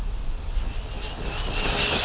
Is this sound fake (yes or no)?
no